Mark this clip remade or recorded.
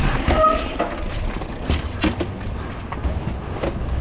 recorded